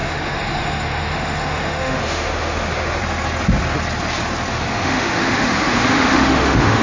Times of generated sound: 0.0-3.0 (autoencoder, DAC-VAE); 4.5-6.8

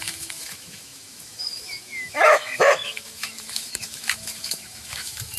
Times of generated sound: 0.0-5.4 (autoencoder, DAC-VAE)

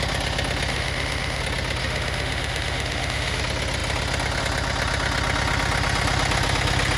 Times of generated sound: 0.7-1.4 (autoencoder, DAC-VAE); 1.8-3.4

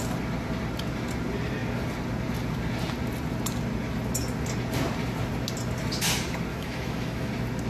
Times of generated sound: 6.5-7.3 (autoencoder, DAC-VAE)

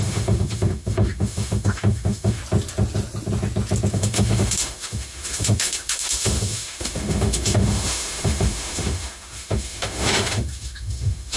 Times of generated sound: 0.0-2.4 (autoencoder, DAC-VAE); 3.9-11.4

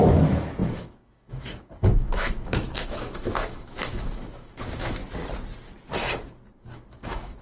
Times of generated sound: 0.0-5.0 (autoencoder, DAC-VAE); 6.6-7.4

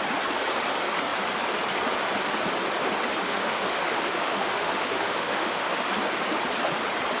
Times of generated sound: 3.3-5.9 (autoencoder, DAC-VAE)